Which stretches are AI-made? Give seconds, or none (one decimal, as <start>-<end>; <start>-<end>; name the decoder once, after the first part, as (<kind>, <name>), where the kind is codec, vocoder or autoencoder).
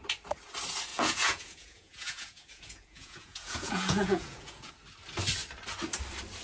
0.9-4.7 (vocoder, Vocos)